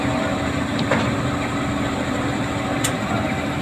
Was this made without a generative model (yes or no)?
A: no